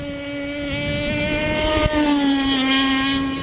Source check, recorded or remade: recorded